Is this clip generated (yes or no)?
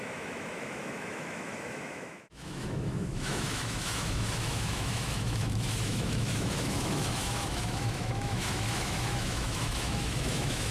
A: yes